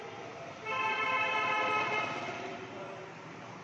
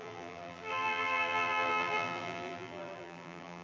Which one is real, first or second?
first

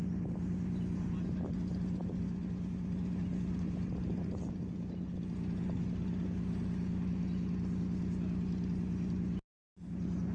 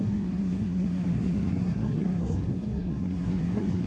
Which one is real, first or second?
first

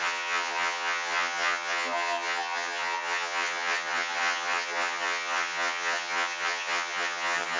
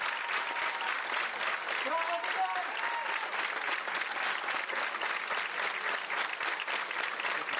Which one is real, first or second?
second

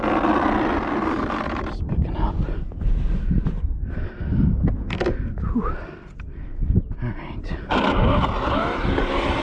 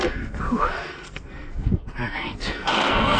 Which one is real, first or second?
first